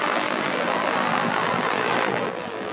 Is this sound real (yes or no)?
no